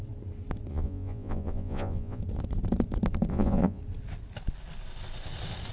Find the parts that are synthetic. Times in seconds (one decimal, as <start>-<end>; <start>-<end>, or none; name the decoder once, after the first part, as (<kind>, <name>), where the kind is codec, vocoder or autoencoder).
0.7-2.2 (vocoder, Vocos); 3.3-3.8